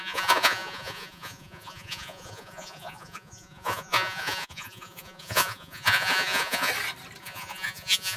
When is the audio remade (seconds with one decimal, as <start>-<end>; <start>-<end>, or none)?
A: 0.0-6.7; 7.2-8.2